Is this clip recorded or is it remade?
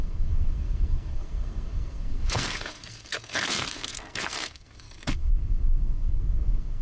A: remade